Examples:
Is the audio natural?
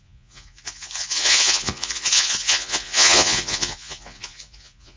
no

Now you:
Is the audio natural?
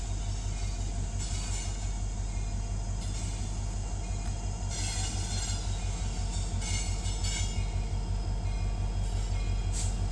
yes